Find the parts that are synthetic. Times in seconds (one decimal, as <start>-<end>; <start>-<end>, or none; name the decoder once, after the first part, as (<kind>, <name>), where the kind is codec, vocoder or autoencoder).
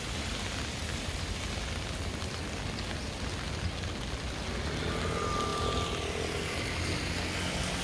0.8-1.4 (vocoder, BigVGAN v2)